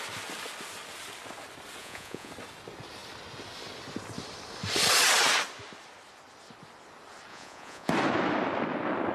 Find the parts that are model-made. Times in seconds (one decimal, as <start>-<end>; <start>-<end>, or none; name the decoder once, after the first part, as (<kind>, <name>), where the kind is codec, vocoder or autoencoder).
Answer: 1.8-2.3 (vocoder, Vocos); 7.3-7.9